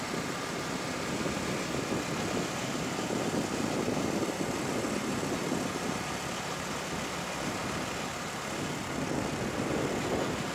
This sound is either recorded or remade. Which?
recorded